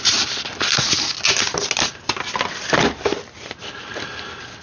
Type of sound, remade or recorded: recorded